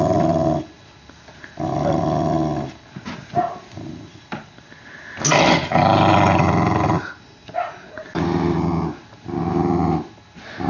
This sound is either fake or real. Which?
real